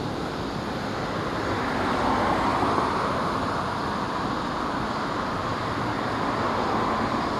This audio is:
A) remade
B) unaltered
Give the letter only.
B